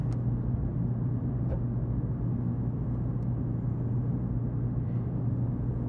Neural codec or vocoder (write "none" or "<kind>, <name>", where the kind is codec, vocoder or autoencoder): none